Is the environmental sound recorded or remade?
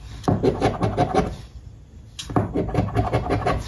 recorded